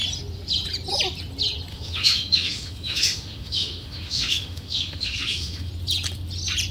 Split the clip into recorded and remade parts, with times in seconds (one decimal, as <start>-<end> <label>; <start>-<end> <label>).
0.0-1.7 recorded; 1.7-5.7 remade; 5.7-6.7 recorded